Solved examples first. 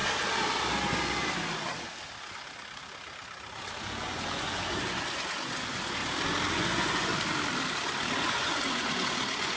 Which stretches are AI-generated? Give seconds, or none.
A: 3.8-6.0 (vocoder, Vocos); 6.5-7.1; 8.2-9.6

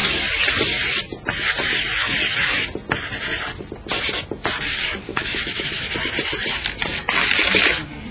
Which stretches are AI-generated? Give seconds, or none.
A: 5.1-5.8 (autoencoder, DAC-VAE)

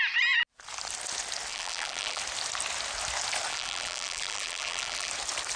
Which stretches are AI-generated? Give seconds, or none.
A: 1.5-2.2 (vocoder, BigVGAN v2); 3.5-5.1